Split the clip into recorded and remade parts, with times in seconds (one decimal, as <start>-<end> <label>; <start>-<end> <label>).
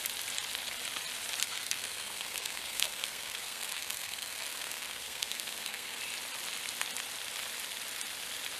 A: 0.0-1.4 recorded; 1.4-6.0 remade; 6.0-8.6 recorded